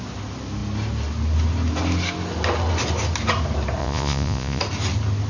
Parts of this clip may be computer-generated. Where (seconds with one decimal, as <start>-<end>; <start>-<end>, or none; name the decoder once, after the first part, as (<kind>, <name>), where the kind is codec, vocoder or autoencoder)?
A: 3.8-4.6 (vocoder, Vocos)